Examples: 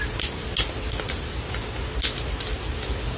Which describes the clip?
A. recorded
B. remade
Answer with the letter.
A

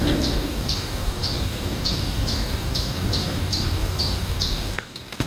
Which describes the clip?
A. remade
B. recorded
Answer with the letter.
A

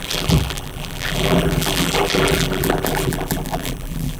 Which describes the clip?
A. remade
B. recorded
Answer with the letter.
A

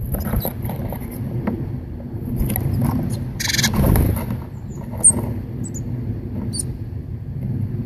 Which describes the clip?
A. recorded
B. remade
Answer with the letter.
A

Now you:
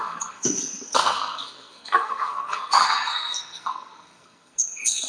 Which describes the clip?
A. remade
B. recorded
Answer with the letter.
A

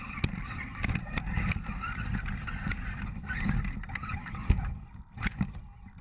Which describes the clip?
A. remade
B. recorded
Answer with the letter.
B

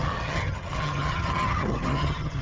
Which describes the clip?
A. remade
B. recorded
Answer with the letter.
A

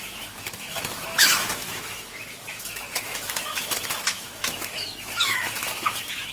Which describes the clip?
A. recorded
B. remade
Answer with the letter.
B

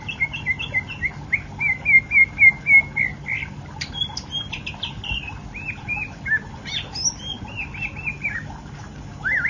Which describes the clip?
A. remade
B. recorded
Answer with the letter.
B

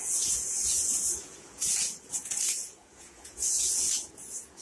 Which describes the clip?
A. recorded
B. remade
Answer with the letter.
B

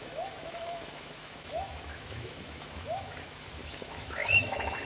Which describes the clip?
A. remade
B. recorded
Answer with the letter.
A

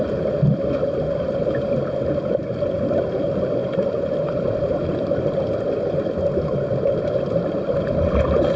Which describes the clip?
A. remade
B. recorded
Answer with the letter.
B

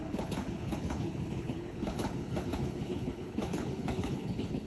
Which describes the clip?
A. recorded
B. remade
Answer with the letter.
B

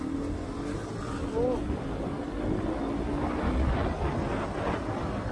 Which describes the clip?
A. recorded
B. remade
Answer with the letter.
A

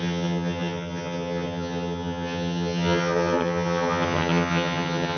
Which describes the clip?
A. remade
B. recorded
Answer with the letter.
A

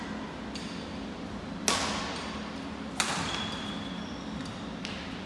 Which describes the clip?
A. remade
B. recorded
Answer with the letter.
B